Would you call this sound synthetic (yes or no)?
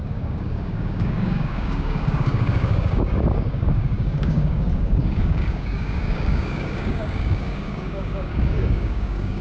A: yes